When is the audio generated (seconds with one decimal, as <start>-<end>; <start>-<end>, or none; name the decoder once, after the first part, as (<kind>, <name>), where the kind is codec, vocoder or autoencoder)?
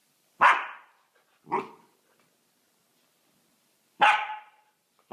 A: 3.1-5.1 (vocoder, BigVGAN v2)